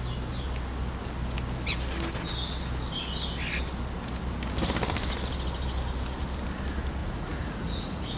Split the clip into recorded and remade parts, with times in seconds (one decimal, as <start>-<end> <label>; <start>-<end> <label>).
0.0-7.0 recorded; 7.0-8.2 remade